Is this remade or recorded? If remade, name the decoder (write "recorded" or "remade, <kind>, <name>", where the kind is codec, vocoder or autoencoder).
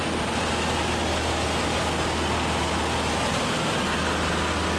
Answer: recorded